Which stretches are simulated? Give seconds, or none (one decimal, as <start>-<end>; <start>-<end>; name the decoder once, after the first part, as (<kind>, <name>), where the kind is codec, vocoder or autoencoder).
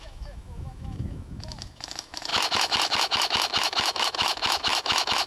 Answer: 0.0-5.3 (autoencoder, DAC-VAE)